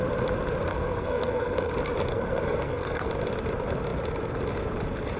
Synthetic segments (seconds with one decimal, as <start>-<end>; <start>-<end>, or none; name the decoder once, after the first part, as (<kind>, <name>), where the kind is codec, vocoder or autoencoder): 0.7-1.7 (codec, SNAC); 2.1-3.1